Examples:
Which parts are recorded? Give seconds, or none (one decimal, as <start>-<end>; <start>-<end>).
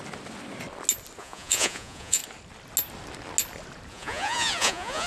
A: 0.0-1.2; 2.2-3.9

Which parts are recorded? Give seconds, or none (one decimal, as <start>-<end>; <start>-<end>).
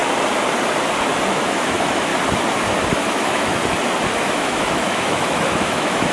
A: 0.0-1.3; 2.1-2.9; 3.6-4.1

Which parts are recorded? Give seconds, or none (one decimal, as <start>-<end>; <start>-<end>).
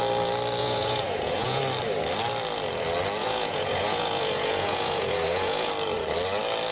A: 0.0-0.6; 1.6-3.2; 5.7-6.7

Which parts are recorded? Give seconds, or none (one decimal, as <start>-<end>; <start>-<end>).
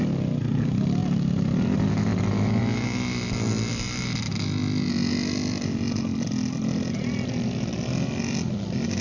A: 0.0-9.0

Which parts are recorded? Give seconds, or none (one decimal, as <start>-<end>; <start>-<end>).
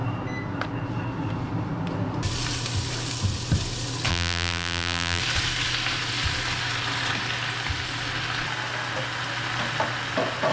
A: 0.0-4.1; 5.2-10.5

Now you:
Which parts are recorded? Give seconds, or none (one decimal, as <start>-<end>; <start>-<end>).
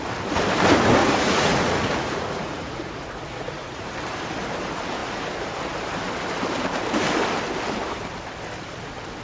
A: 0.0-1.0; 3.9-9.2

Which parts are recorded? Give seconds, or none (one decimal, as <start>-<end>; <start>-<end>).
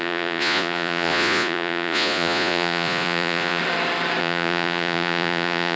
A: 3.6-4.2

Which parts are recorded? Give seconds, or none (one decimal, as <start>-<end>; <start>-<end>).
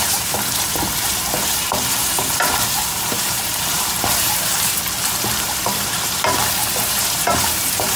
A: 4.5-5.0